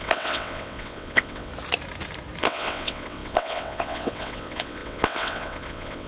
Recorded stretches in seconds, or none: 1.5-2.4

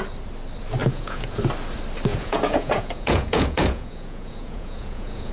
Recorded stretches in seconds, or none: 0.0-0.8; 1.4-2.1

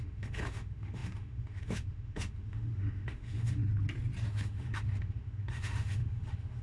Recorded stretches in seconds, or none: 3.7-4.3

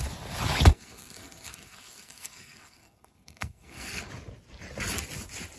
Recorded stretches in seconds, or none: 0.0-0.7; 4.1-5.6

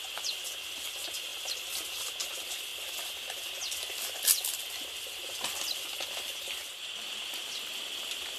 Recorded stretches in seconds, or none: 0.0-8.4